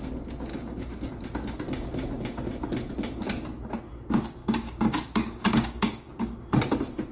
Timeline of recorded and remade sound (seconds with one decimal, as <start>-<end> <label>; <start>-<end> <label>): 0.0-0.5 recorded; 0.5-1.1 remade; 1.1-4.4 recorded; 4.4-6.4 remade; 6.4-7.1 recorded